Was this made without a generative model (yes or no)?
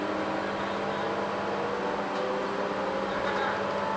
yes